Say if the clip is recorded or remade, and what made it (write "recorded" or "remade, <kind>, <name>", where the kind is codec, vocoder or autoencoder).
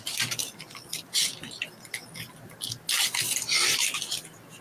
recorded